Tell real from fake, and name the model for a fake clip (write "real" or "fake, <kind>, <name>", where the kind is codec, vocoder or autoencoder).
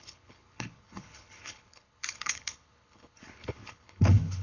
fake, codec, HILCodec